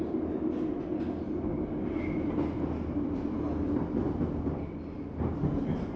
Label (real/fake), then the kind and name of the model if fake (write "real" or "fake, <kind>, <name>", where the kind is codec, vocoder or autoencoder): real